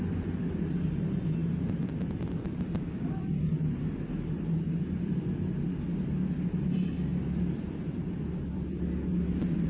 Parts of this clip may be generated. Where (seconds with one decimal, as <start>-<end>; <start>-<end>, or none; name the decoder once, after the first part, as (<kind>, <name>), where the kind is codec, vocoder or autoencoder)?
0.0-7.1 (vocoder, BigVGAN v2); 7.8-9.7